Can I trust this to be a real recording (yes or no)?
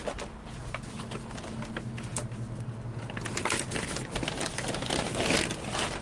yes